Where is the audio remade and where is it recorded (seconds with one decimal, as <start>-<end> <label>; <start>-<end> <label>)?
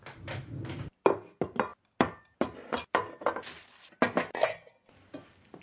0.0-5.6 recorded